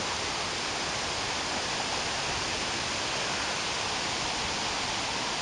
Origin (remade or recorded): recorded